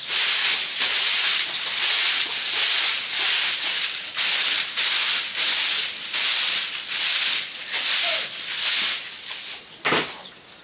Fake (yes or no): no